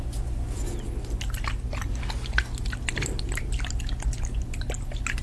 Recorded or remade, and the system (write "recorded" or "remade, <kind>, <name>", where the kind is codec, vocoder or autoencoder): recorded